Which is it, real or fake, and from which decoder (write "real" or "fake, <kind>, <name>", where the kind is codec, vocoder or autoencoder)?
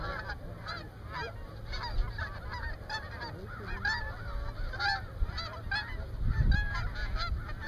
real